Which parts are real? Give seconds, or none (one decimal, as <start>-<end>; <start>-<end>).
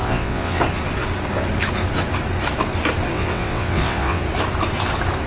0.6-3.1; 4.2-5.3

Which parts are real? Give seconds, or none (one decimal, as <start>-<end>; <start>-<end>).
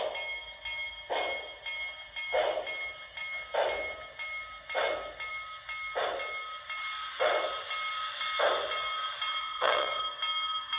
0.0-9.4; 10.0-10.8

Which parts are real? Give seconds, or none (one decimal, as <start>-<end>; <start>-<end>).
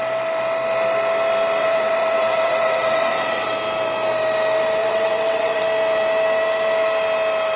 0.0-1.6; 3.5-4.8; 5.6-7.6